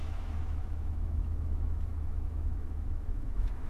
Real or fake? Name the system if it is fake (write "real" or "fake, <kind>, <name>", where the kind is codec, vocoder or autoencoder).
fake, autoencoder, DAC-VAE